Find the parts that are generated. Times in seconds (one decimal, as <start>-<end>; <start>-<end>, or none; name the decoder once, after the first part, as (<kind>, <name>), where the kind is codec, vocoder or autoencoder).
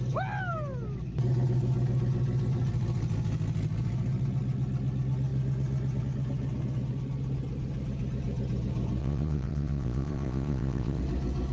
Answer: 9.0-11.0 (vocoder, Vocos)